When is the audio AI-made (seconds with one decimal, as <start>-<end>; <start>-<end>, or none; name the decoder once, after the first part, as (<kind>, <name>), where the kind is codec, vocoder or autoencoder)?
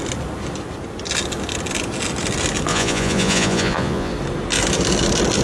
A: 2.7-4.1 (vocoder, Vocos)